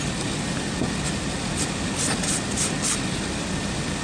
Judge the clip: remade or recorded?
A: recorded